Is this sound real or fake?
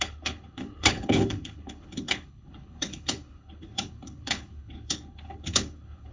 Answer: fake